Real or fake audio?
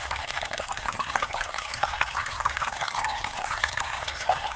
fake